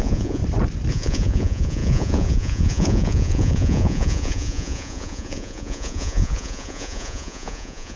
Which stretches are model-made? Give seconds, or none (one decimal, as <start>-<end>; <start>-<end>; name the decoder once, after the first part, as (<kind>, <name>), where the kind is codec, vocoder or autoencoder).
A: 0.0-0.4 (vocoder, Vocos); 0.9-8.0